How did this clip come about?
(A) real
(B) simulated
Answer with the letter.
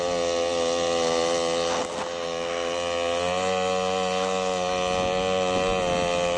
A